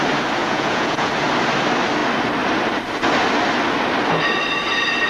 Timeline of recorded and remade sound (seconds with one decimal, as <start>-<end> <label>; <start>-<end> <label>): 0.0-0.4 recorded; 0.4-1.1 remade; 1.1-5.1 recorded